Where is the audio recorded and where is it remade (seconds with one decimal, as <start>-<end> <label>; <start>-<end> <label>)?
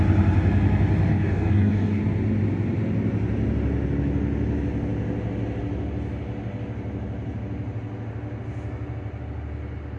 0.0-1.1 recorded; 1.1-2.0 remade; 2.0-10.0 recorded